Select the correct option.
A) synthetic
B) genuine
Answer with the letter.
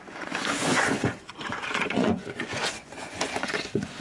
A